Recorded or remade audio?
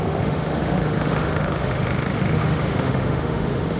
remade